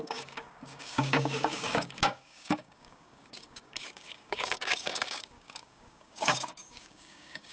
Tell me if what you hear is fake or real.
fake